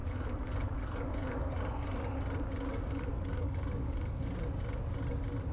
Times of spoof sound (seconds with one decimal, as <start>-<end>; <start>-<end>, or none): 0.0-1.5; 2.7-4.3